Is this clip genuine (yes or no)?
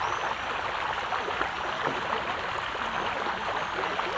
yes